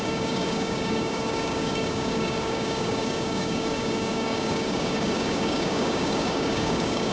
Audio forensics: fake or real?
fake